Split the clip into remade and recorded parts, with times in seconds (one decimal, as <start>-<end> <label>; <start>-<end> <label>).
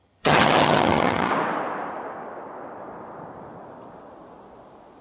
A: 0.0-1.3 remade; 1.3-5.0 recorded